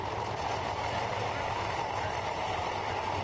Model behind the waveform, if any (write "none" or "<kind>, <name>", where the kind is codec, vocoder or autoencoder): none